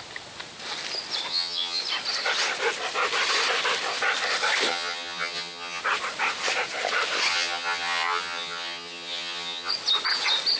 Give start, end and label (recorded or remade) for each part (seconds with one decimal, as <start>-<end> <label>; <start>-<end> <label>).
0.0-1.3 recorded; 1.3-1.8 remade; 1.8-4.7 recorded; 4.7-5.8 remade; 5.8-7.3 recorded; 7.3-9.7 remade; 9.7-10.6 recorded